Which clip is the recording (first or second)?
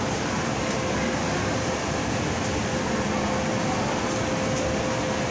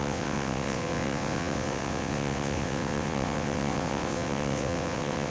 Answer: first